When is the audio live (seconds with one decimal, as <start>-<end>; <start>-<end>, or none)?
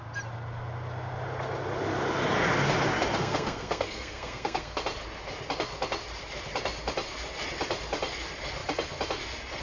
0.0-3.2; 4.8-9.6